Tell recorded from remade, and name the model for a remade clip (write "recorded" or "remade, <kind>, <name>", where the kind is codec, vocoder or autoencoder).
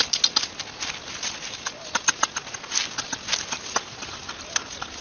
recorded